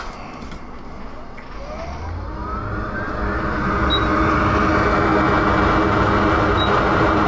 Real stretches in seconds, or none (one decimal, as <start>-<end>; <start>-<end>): 0.0-7.3